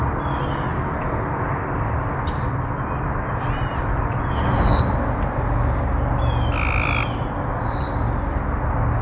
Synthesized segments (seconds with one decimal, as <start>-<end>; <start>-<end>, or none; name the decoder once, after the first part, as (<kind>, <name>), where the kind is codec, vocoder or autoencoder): none